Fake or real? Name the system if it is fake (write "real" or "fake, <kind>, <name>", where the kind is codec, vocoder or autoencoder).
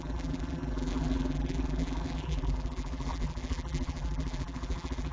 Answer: fake, vocoder, BigVGAN v2